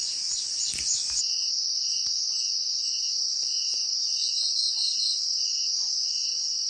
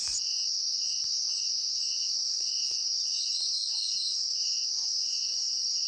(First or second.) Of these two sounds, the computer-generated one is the second